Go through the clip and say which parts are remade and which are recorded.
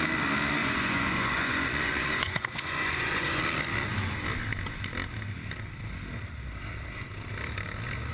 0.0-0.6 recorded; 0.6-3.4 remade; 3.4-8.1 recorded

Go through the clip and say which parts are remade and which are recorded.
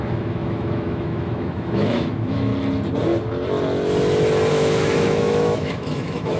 0.0-2.5 remade; 2.5-4.5 recorded; 4.5-6.4 remade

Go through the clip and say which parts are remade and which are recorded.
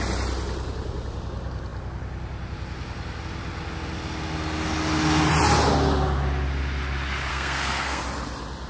0.0-7.3 recorded; 7.3-8.0 remade; 8.0-8.7 recorded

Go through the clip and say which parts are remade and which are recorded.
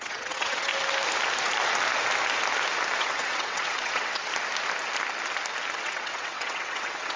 0.0-0.7 remade; 0.7-3.0 recorded; 3.0-4.3 remade; 4.3-5.8 recorded; 5.8-7.2 remade